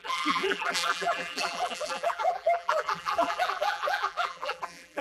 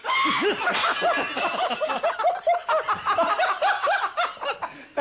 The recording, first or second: second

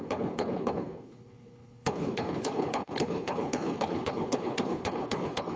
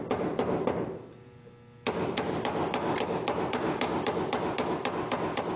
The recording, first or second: second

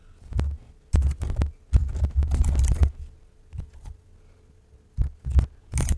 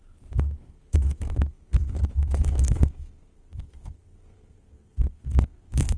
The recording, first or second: first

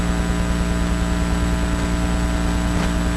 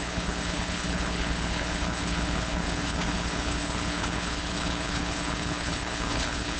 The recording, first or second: first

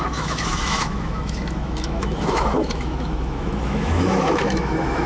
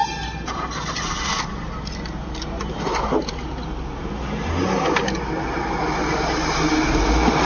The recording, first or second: second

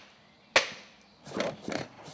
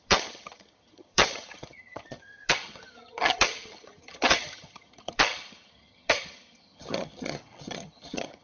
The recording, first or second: first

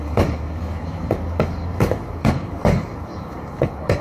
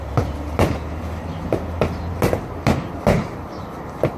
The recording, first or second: second